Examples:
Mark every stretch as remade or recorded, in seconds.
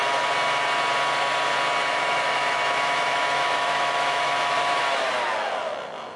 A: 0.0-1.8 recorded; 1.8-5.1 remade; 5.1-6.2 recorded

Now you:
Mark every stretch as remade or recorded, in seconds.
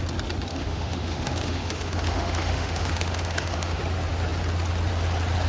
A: 0.0-0.5 recorded; 0.5-3.8 remade; 3.8-5.5 recorded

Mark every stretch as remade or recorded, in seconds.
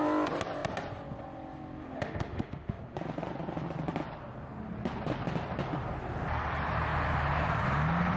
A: 0.0-1.8 recorded; 1.8-2.8 remade; 2.8-8.2 recorded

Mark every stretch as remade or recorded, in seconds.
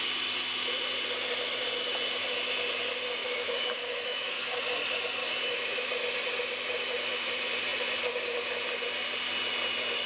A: 0.0-3.2 recorded; 3.2-4.6 remade; 4.6-5.2 recorded; 5.2-5.9 remade; 5.9-10.1 recorded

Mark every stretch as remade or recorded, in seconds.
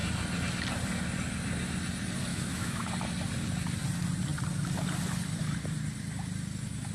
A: 0.0-2.3 recorded; 2.3-2.9 remade; 2.9-6.9 recorded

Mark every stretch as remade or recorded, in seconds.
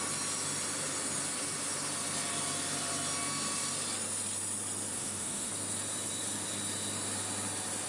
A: 0.0-4.9 recorded; 4.9-5.5 remade; 5.5-7.9 recorded